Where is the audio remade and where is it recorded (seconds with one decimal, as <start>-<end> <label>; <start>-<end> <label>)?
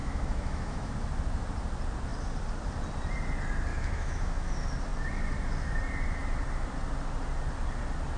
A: 0.0-0.9 remade; 0.9-3.7 recorded; 3.7-4.5 remade; 4.5-8.2 recorded